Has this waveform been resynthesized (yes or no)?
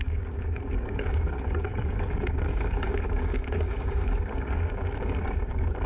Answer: yes